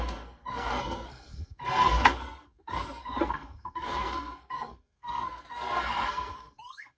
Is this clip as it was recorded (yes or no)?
no